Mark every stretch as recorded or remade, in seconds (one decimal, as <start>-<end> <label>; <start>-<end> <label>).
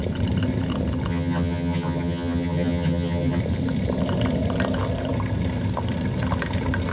0.0-1.1 recorded; 1.1-3.4 remade; 3.4-6.9 recorded